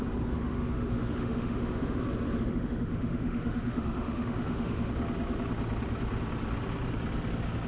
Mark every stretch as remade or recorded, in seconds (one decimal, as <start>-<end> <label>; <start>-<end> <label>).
0.0-0.4 recorded; 0.4-2.0 remade; 2.0-2.5 recorded; 2.5-4.9 remade; 4.9-7.7 recorded